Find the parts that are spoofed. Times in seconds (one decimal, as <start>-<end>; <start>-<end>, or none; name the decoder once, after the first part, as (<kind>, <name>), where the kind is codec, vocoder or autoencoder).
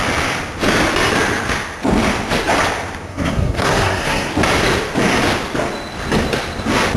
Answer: 3.1-4.3 (codec, SNAC)